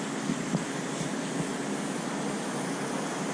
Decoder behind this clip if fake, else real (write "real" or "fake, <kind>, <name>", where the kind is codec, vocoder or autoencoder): real